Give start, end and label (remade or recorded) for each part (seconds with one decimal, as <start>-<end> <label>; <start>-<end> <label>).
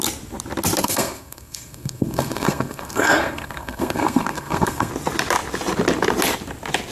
0.0-0.8 recorded; 0.8-4.9 remade; 4.9-6.9 recorded